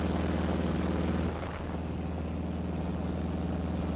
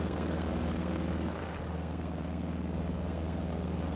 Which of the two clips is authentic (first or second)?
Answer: first